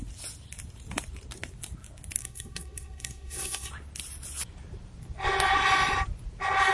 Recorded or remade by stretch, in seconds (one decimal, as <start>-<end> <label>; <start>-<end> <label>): 0.0-2.2 recorded; 2.2-3.7 remade; 3.7-6.7 recorded